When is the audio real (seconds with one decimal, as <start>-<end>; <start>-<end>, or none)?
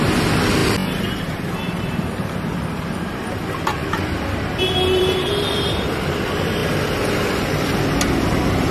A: 0.0-8.7